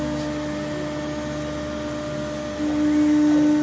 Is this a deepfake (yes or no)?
no